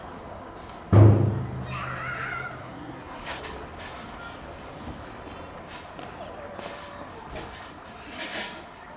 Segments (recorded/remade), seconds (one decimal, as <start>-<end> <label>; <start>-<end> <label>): 0.0-2.6 recorded; 2.6-3.4 remade; 3.4-9.0 recorded